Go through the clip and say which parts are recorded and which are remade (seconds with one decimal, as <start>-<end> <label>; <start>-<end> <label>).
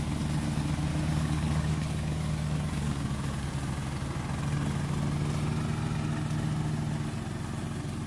0.0-0.9 recorded; 0.9-3.5 remade; 3.5-8.1 recorded